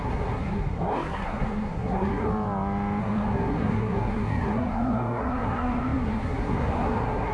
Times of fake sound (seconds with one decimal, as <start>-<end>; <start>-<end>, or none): 0.0-2.3; 3.0-7.3